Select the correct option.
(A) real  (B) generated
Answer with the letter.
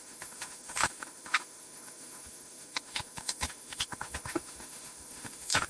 B